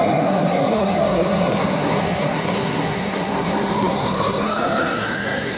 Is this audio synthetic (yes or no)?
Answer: yes